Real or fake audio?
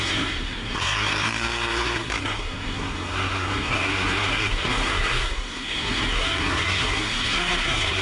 fake